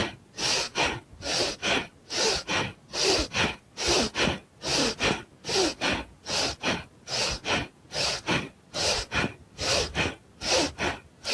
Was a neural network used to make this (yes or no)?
no